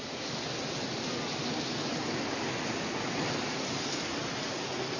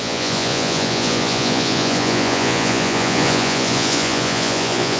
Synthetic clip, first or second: second